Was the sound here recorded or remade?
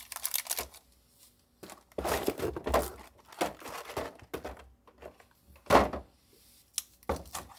recorded